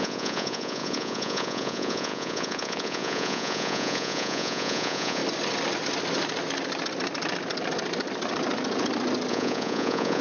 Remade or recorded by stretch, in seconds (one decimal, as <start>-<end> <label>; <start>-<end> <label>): 0.0-5.2 remade; 5.2-9.3 recorded; 9.3-10.2 remade